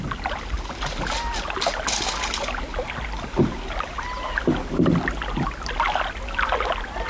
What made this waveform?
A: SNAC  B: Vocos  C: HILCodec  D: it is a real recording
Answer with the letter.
D